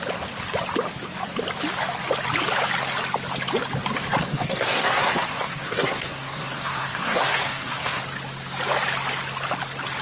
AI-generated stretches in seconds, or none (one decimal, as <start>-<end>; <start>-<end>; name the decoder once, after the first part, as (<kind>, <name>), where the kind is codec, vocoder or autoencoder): 4.3-8.0 (codec, SNAC)